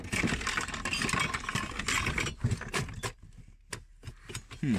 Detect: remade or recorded recorded